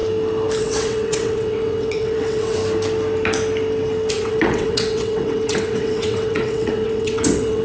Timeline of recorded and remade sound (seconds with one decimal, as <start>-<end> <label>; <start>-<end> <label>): 0.0-0.6 recorded; 0.6-2.6 remade; 2.6-4.1 recorded; 4.1-7.6 remade